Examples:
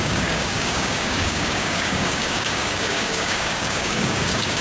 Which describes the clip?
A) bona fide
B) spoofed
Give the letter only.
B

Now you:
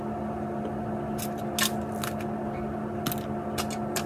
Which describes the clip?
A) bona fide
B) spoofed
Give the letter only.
A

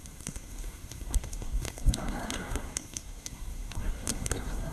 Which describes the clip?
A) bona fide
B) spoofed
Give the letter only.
B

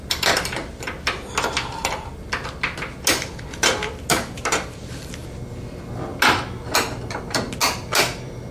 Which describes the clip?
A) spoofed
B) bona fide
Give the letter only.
B